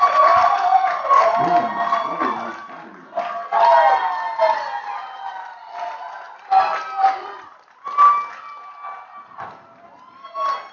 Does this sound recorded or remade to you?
recorded